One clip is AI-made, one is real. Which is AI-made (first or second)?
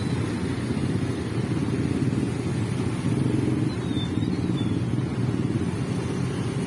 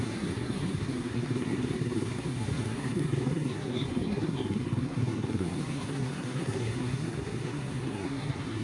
second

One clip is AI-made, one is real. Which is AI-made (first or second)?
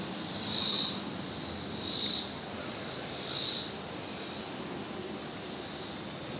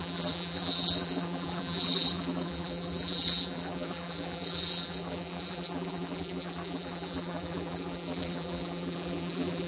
second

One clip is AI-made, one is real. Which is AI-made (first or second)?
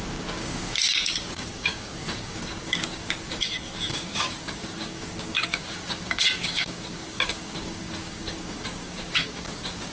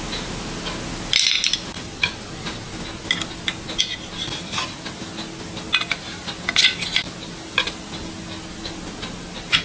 first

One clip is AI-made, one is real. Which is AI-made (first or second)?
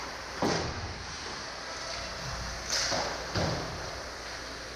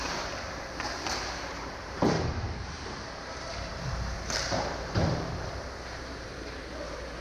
second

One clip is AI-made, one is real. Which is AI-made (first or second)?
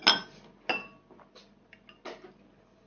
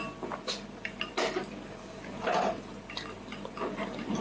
second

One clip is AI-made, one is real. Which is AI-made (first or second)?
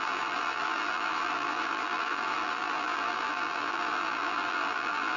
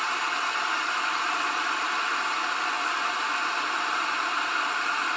first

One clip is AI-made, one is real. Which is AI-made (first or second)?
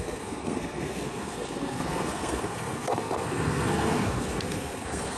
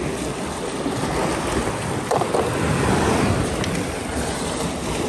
first